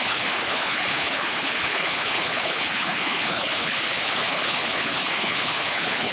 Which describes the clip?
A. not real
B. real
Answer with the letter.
A